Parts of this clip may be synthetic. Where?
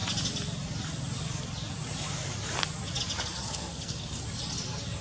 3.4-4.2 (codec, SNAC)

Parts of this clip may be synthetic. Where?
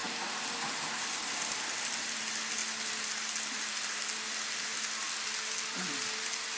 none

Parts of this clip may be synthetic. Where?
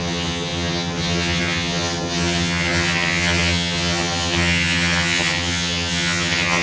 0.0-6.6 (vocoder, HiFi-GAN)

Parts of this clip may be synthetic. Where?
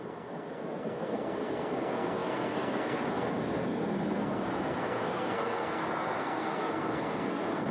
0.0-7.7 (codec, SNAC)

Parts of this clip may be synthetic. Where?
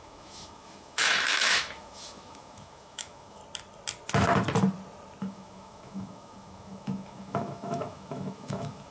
0.0-3.4 (autoencoder, DAC-VAE); 5.2-8.9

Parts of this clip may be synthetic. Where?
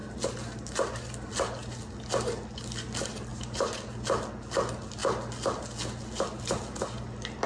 3.3-3.8 (vocoder, BigVGAN v2)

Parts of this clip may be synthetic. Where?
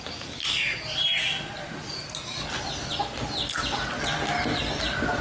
none